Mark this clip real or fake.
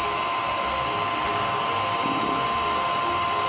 real